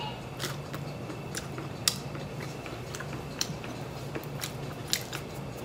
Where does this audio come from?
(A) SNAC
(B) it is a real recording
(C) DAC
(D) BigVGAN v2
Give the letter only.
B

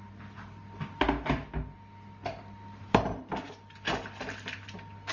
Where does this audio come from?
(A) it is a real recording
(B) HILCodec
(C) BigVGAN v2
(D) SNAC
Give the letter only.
A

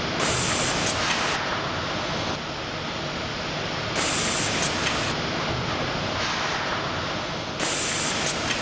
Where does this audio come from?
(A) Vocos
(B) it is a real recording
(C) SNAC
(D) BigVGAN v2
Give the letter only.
B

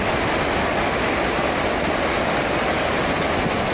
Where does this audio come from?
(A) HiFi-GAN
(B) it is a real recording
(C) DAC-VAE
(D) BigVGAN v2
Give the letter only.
B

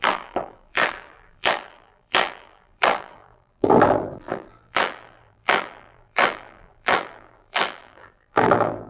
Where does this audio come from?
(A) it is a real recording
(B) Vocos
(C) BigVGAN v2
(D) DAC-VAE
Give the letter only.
C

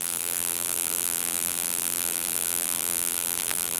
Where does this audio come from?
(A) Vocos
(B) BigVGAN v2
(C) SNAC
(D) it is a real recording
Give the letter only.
B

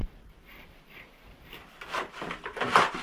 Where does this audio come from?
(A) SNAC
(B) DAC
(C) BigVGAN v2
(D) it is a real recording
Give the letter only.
C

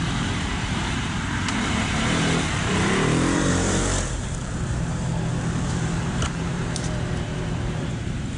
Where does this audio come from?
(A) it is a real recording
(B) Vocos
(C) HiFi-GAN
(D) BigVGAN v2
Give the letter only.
D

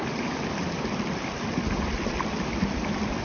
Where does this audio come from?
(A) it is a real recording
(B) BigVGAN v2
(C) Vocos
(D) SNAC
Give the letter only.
A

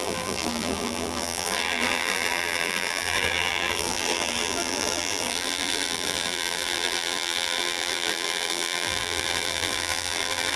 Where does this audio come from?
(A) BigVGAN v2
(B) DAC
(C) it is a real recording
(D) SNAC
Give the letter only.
A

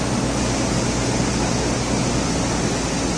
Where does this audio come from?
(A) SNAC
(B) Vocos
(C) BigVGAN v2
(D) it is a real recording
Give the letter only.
D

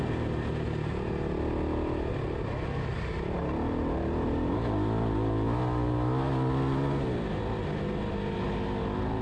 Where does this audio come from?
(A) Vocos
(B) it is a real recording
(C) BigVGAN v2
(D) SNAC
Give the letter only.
B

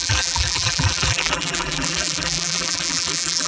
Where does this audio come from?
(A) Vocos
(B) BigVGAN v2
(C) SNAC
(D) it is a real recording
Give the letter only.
B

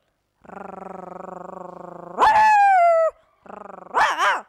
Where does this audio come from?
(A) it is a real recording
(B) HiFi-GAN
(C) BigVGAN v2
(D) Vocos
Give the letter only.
A